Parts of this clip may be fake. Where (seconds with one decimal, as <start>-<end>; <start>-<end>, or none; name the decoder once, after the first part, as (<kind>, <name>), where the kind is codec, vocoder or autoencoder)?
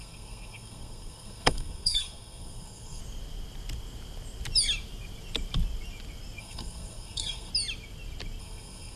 0.0-3.0 (codec, SNAC); 6.4-7.5; 8.4-9.0